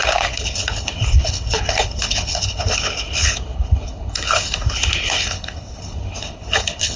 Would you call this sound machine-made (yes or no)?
yes